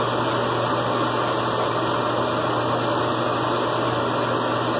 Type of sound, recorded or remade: recorded